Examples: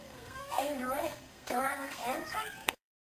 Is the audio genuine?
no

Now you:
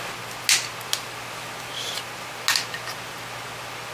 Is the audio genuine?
yes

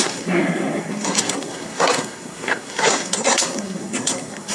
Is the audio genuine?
no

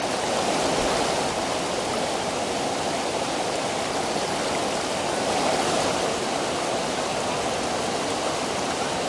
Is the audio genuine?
yes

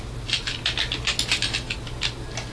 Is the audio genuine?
yes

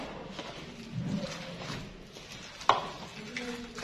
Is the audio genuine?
yes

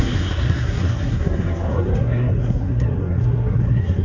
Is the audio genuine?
no